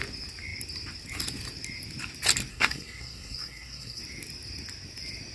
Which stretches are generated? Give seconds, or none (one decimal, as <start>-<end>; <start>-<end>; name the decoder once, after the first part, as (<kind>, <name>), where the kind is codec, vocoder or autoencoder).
2.5-4.0 (codec, SNAC)